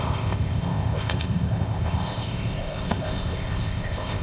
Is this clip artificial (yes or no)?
yes